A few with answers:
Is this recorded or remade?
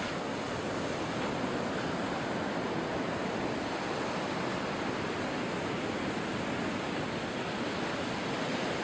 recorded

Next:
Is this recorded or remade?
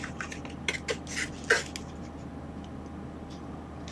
recorded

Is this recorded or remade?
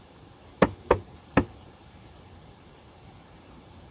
remade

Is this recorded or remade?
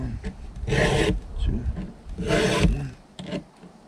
recorded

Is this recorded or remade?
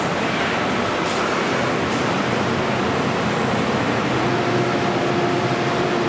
recorded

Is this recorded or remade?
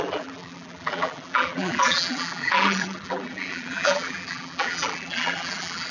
remade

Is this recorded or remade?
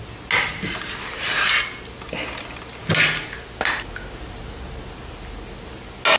recorded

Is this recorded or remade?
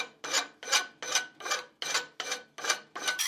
recorded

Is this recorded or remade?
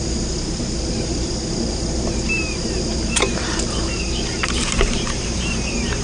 remade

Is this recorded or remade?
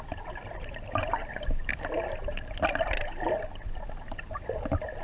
recorded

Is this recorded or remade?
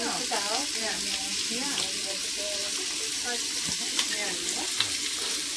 recorded